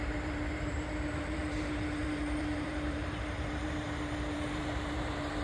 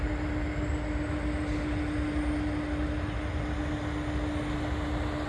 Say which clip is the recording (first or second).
second